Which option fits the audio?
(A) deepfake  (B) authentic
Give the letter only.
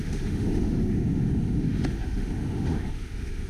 A